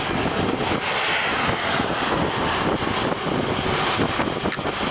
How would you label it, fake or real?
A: real